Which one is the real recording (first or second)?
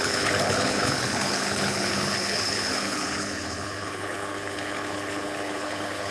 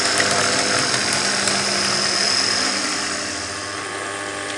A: second